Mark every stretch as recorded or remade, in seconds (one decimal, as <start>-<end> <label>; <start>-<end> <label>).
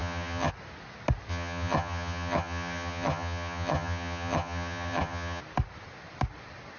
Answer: 0.0-0.5 remade; 0.5-1.3 recorded; 1.3-5.4 remade; 5.4-6.8 recorded